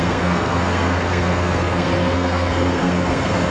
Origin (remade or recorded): remade